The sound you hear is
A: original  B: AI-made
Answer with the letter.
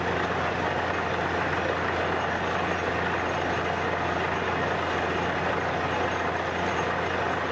A